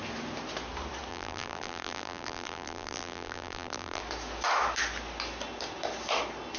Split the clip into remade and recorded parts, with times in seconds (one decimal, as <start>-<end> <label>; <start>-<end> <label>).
0.0-1.1 recorded; 1.1-4.0 remade; 4.0-6.6 recorded